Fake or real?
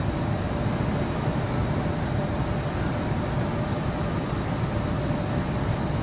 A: real